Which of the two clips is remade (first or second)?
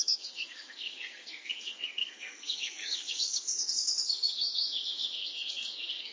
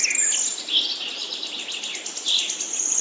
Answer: first